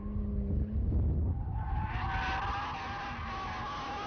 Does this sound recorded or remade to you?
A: recorded